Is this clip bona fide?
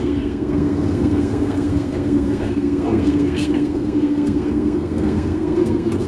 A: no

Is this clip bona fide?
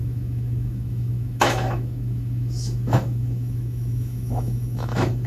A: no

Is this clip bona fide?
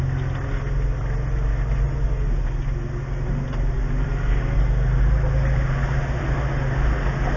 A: yes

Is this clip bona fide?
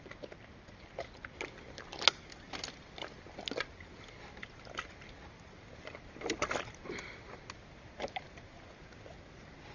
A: yes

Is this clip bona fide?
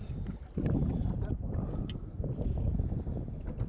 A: yes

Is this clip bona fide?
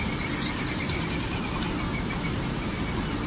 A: yes